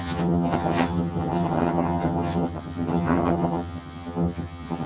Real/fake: fake